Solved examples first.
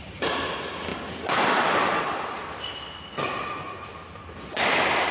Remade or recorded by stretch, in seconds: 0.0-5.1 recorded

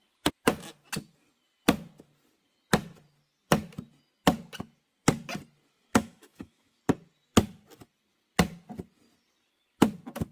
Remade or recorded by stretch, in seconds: 0.0-5.9 recorded; 5.9-6.8 remade; 6.8-10.3 recorded

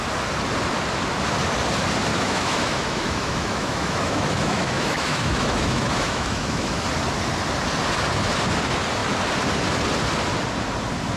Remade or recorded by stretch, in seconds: 0.0-2.1 recorded; 2.1-6.8 remade; 6.8-11.2 recorded

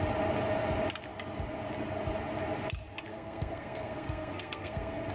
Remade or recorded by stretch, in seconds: 0.0-3.1 recorded; 3.1-5.1 remade

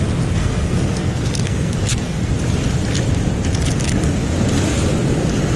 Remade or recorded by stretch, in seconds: 0.0-0.4 recorded; 0.4-2.3 remade; 2.3-5.6 recorded

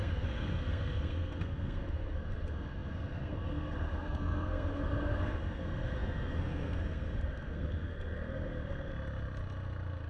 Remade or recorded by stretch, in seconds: 0.0-8.9 remade; 8.9-10.1 recorded

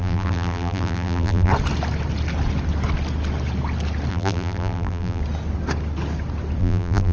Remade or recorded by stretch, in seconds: 0.0-1.5 remade; 1.5-4.1 recorded; 4.1-5.2 remade; 5.2-6.6 recorded; 6.6-7.1 remade

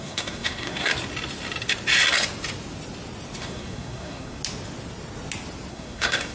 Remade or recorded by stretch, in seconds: 0.0-0.9 remade; 0.9-3.4 recorded; 3.4-4.4 remade; 4.4-5.7 recorded; 5.7-6.3 remade